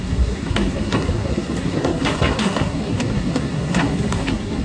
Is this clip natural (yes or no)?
no